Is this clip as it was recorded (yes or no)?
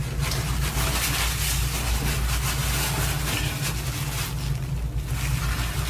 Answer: yes